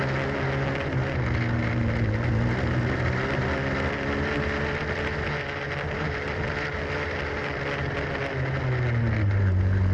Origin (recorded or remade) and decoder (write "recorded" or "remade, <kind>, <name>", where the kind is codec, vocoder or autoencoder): recorded